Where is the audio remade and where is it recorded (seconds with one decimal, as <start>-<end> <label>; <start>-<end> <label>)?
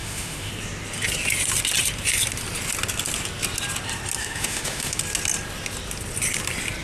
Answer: 0.0-0.5 remade; 0.5-4.2 recorded; 4.2-5.0 remade; 5.0-6.8 recorded